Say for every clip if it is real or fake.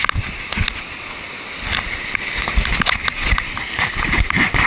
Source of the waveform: real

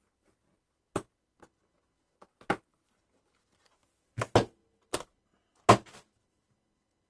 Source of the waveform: real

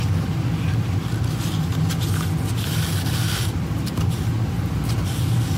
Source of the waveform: real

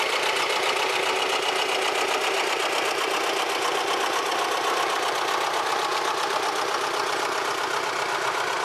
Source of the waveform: real